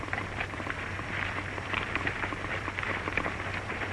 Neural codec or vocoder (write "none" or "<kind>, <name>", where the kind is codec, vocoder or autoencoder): vocoder, BigVGAN v2